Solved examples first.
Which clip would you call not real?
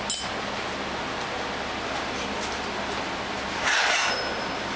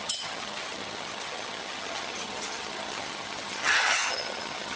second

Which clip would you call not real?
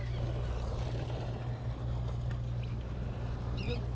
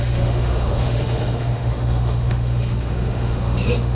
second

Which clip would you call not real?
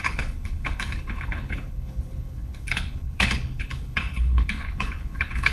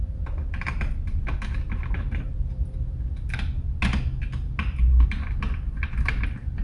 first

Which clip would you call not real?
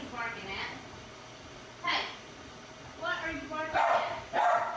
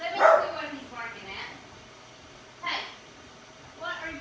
second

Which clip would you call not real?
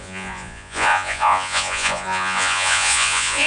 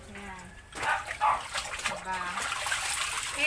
first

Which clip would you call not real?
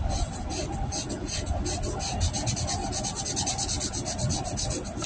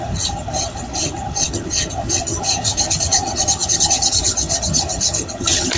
second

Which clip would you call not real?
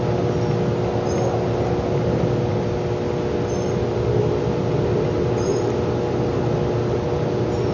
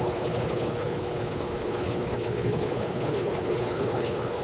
second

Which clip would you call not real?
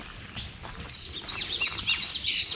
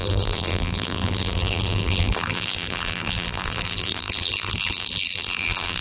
second